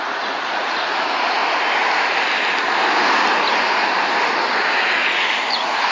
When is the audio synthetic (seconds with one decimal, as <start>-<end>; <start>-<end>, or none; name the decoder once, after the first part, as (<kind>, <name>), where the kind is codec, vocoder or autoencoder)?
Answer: 0.0-1.4 (vocoder, Vocos); 4.9-5.9